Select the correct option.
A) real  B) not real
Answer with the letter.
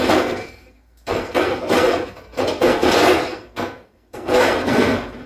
B